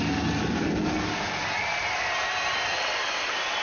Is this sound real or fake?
real